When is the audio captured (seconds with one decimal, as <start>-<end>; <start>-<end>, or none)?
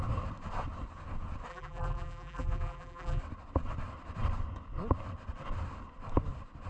0.0-1.5; 3.2-6.7